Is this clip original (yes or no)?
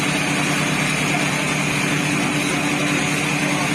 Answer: yes